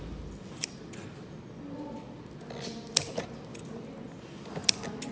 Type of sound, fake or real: real